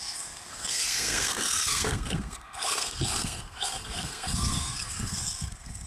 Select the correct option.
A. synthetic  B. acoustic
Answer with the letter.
A